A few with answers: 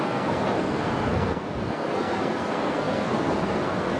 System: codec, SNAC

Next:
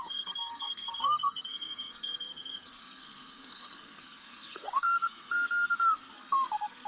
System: codec, SNAC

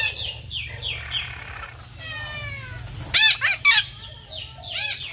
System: none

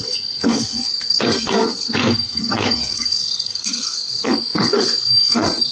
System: codec, SNAC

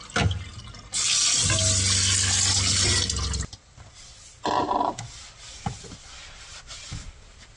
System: none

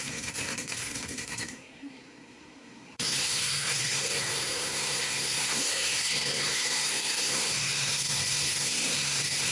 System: codec, SNAC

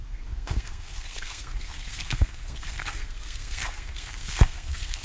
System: codec, SNAC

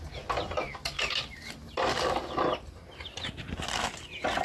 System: none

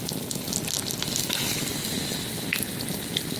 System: none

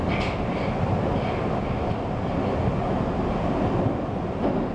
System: none